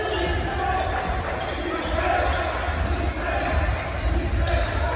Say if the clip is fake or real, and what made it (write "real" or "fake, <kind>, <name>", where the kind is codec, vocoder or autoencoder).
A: real